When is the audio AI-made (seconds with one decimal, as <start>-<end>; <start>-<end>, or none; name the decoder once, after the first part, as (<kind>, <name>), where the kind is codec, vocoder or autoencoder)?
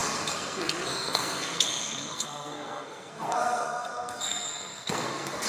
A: 0.0-5.5 (codec, SNAC)